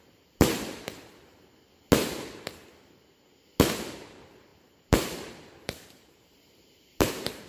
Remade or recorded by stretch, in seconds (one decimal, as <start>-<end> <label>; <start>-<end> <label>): 0.0-0.7 remade; 0.7-3.9 recorded; 3.9-7.5 remade